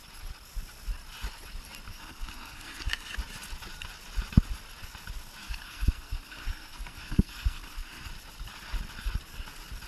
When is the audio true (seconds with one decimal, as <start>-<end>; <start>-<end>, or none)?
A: 0.0-1.9; 3.1-5.4; 8.1-9.9